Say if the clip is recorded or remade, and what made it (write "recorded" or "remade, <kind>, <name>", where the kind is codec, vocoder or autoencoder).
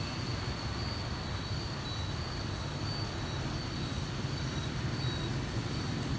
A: recorded